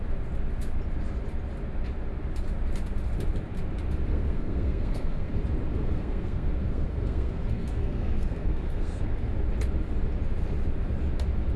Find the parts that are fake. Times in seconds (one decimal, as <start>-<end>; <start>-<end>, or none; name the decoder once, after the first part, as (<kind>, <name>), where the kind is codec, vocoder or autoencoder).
4.1-5.3 (codec, SNAC); 5.7-9.3